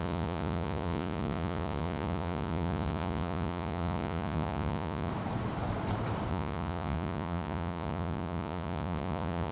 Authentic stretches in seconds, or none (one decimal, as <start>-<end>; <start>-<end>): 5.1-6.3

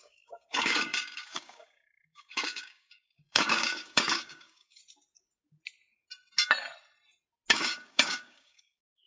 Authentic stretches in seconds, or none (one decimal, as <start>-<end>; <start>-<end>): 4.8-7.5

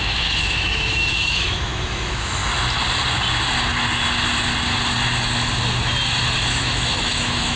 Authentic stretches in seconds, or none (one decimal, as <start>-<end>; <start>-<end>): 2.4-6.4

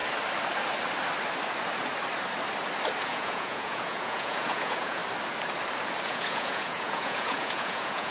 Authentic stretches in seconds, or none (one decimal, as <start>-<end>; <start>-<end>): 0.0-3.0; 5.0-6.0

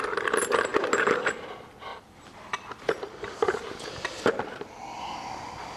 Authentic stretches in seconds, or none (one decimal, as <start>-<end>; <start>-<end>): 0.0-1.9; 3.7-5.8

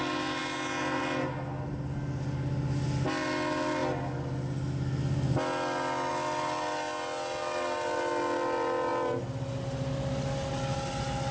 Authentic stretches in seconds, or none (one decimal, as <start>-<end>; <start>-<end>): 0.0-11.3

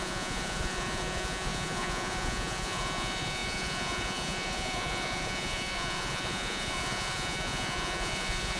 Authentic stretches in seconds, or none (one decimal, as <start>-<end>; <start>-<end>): none